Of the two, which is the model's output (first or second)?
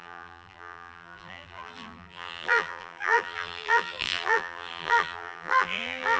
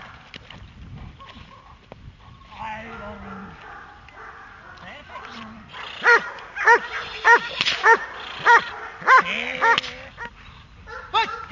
first